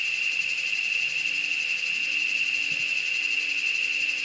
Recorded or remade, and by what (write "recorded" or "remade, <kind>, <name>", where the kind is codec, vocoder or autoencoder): recorded